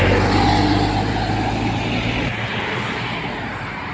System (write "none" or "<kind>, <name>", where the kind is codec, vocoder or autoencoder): none